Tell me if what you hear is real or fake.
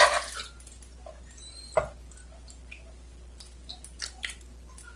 real